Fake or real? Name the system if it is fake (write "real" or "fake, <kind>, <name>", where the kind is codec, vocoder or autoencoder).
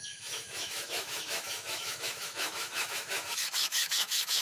fake, autoencoder, DAC-VAE